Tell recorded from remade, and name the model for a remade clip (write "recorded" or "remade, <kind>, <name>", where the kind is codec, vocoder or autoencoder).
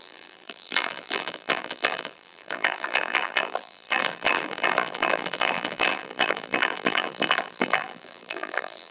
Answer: remade, vocoder, BigVGAN v2